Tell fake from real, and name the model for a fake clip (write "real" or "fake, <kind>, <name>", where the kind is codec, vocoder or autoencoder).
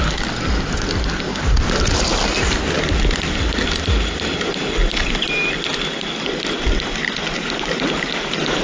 real